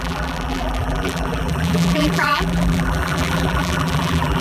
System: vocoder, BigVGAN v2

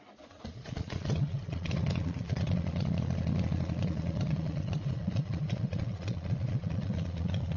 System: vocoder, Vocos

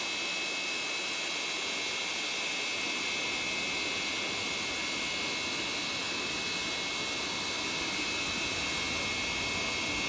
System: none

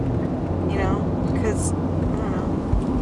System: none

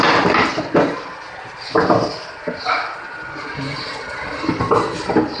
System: none